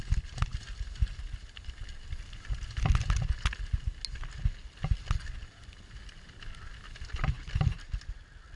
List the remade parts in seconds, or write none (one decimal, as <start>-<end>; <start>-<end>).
none